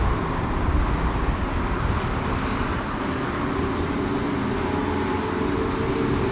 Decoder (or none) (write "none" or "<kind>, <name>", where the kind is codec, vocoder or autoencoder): none